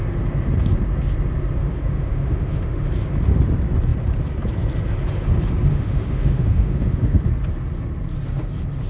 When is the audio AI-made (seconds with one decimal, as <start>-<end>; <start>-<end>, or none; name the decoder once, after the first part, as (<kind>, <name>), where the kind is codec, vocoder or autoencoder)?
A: 1.6-2.9 (autoencoder, DAC-VAE); 5.7-7.3